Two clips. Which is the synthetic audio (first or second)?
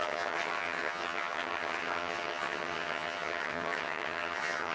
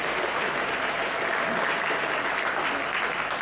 first